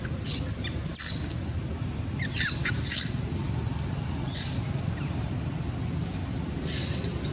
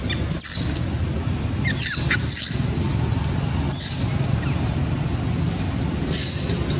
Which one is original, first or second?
second